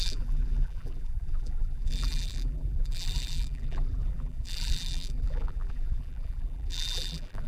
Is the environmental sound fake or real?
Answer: fake